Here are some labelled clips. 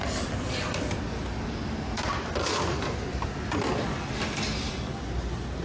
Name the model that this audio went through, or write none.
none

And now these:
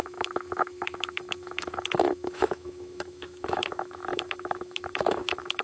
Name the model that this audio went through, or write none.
autoencoder, DAC-VAE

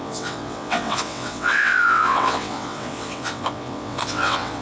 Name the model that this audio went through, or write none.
vocoder, WaveNeXt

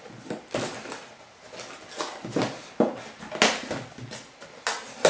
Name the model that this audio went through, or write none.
none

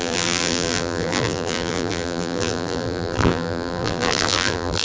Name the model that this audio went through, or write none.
vocoder, BigVGAN v2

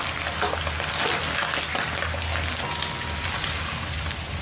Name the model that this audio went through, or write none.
none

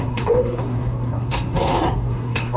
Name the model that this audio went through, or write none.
codec, SNAC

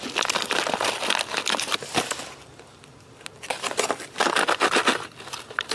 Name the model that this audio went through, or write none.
none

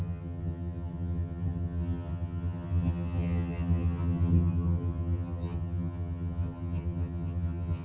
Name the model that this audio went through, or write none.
vocoder, HiFi-GAN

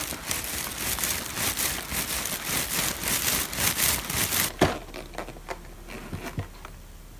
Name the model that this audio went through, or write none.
none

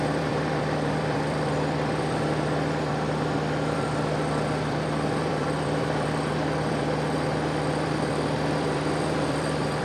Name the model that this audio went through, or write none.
vocoder, BigVGAN v2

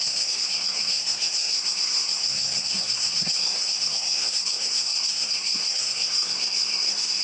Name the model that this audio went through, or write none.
codec, SNAC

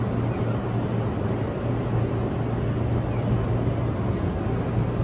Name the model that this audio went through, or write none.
none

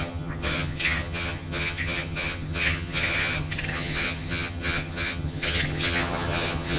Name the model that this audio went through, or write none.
vocoder, HiFi-GAN